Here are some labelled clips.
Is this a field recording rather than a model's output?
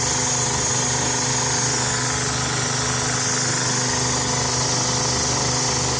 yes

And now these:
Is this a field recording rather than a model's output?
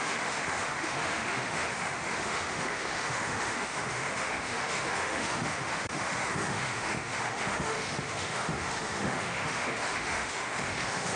no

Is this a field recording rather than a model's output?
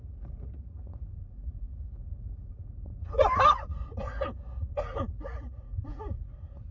no